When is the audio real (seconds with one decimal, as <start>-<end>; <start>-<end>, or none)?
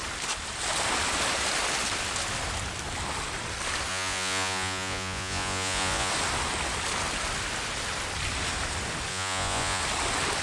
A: 0.0-3.9; 6.1-9.1; 9.8-10.4